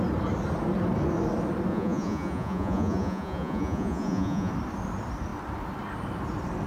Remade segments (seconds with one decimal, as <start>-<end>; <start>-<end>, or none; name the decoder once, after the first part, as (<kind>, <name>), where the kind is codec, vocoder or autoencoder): 1.7-4.5 (vocoder, Vocos)